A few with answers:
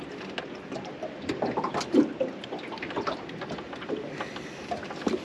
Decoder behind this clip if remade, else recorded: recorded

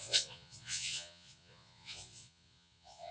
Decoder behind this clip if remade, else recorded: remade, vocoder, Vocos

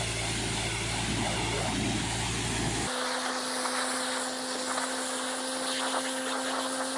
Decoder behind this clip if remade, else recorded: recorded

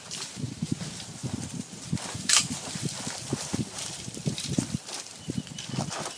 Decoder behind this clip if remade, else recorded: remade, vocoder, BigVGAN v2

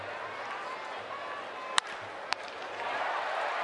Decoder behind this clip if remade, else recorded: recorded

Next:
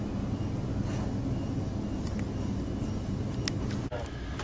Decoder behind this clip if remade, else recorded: recorded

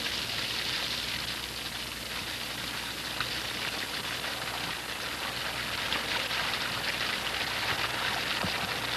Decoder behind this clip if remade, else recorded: recorded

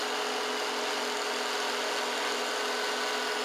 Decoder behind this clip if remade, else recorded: recorded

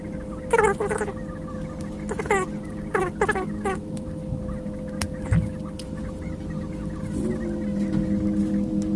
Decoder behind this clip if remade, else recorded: recorded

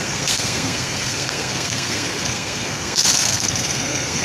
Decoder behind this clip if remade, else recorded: remade, codec, SNAC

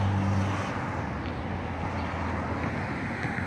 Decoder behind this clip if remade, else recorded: recorded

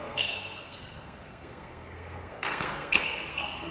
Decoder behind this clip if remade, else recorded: remade, codec, SNAC